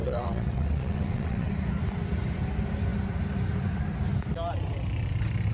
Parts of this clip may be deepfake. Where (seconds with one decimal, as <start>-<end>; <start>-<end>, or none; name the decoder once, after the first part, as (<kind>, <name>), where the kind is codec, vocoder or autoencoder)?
0.0-1.5 (vocoder, WaveNeXt)